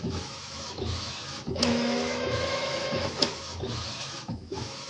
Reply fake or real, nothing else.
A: fake